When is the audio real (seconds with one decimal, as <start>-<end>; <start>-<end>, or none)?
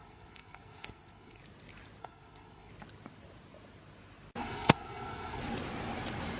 1.4-2.0; 2.7-4.4; 5.4-6.4